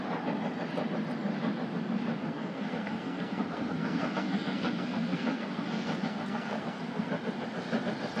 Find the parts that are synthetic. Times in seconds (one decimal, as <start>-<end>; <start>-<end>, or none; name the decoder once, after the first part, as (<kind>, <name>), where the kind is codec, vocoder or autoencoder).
2.2-7.1 (codec, SNAC)